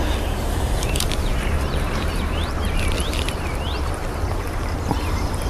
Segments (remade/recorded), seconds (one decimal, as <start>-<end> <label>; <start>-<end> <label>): 0.0-5.5 remade

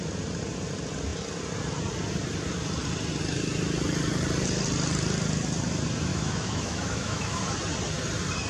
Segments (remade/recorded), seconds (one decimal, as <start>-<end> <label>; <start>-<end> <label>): 0.0-6.1 recorded; 6.1-7.4 remade; 7.4-8.5 recorded

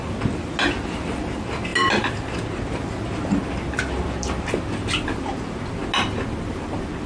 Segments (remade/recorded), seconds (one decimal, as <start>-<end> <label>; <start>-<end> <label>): 0.0-7.1 recorded